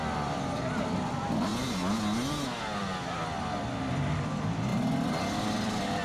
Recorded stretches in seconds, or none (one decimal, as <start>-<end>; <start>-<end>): 0.0-6.0